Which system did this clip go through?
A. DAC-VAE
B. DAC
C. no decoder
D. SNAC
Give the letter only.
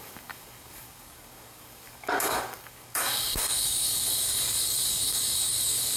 B